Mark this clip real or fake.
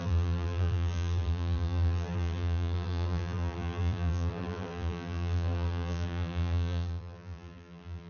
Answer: fake